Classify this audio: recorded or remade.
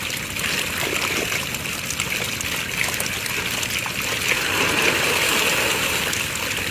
recorded